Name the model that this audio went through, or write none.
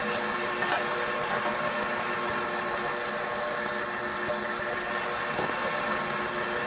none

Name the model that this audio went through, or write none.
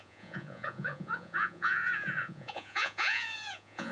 vocoder, Vocos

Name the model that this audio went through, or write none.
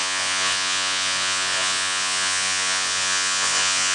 vocoder, Vocos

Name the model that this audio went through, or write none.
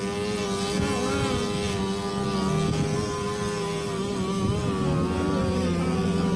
none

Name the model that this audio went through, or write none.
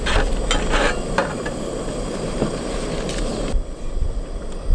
none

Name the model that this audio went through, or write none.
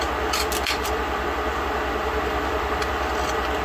none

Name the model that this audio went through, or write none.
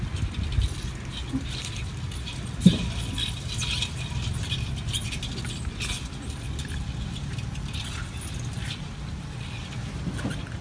none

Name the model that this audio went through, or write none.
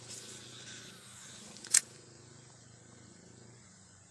vocoder, Vocos